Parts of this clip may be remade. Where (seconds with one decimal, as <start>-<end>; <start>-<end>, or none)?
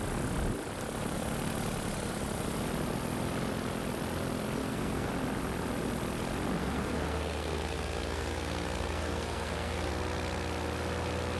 4.6-5.1; 6.6-9.9